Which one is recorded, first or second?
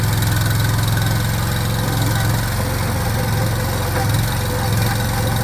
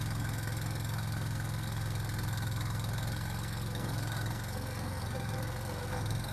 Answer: first